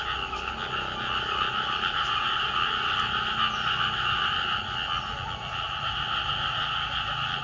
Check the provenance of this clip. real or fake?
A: real